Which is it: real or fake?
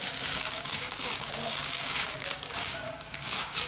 fake